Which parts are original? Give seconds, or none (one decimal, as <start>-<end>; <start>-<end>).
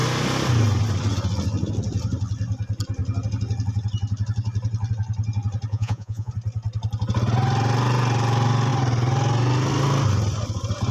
0.0-5.7; 6.3-10.9